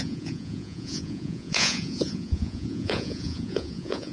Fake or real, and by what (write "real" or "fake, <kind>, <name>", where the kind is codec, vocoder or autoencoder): fake, vocoder, Vocos